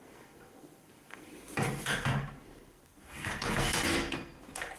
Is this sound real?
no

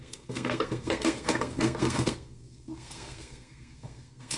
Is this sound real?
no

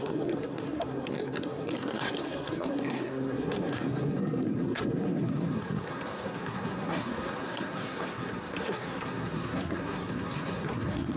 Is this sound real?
no